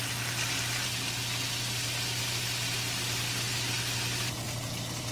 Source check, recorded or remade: recorded